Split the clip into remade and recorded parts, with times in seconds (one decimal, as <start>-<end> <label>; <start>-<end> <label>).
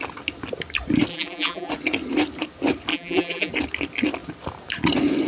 0.0-1.1 recorded; 1.1-1.7 remade; 1.7-2.9 recorded; 2.9-3.5 remade; 3.5-5.3 recorded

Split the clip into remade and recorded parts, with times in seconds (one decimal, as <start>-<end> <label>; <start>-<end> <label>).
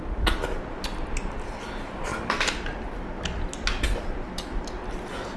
0.0-5.4 recorded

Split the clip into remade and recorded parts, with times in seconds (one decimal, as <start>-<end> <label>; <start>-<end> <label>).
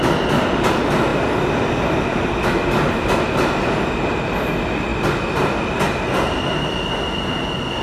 0.0-7.8 recorded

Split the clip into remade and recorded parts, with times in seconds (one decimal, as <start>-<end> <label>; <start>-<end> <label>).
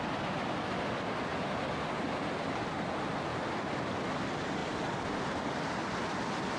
0.0-1.3 recorded; 1.3-1.8 remade; 1.8-3.3 recorded; 3.3-4.0 remade; 4.0-4.6 recorded; 4.6-5.9 remade; 5.9-6.6 recorded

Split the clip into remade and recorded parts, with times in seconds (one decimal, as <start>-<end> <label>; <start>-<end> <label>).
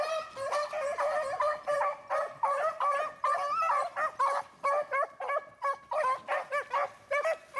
0.0-7.6 recorded